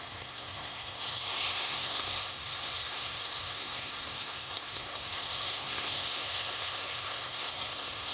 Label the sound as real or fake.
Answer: fake